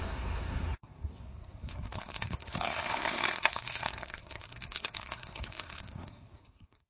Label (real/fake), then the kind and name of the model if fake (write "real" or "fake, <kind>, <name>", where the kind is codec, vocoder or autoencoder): fake, codec, SNAC